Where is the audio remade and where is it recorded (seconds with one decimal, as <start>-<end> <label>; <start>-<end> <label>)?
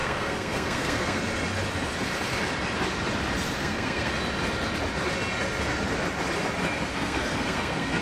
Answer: 0.0-1.2 remade; 1.2-3.6 recorded; 3.6-4.1 remade; 4.1-6.9 recorded; 6.9-8.0 remade